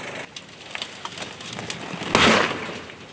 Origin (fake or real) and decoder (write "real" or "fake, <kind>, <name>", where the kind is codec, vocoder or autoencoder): real